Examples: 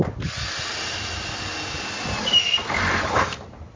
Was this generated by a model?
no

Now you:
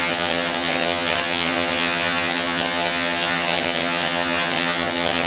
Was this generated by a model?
yes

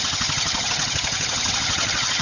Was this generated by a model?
yes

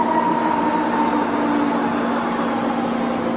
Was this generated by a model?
no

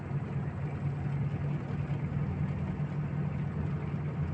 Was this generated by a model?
no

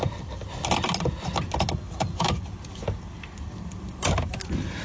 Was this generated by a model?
no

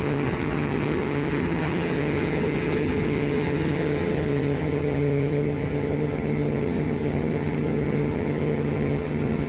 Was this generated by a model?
yes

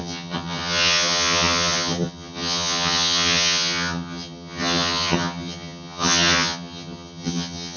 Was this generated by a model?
yes